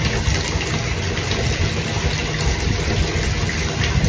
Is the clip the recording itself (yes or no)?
yes